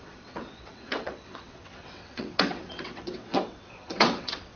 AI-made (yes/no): yes